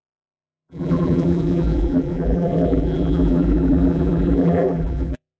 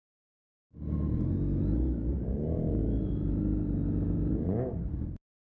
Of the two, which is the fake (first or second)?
first